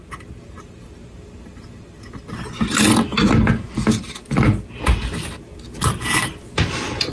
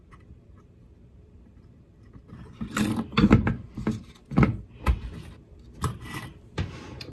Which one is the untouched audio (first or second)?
first